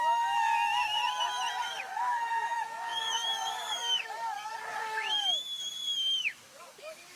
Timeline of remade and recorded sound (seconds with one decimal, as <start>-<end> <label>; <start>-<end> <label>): 0.0-1.0 remade; 1.0-1.6 recorded; 1.6-7.2 remade